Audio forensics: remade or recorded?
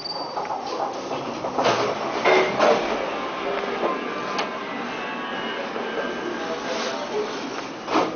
recorded